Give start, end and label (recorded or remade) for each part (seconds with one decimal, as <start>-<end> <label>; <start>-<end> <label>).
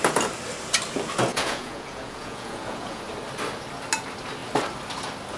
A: 0.0-1.3 recorded; 1.3-3.0 remade; 3.0-5.4 recorded